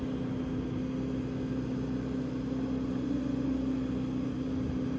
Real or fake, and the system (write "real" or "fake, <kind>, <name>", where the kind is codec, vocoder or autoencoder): real